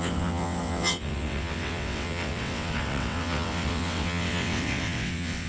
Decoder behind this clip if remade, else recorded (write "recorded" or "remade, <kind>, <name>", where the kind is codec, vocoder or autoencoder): remade, vocoder, WaveNeXt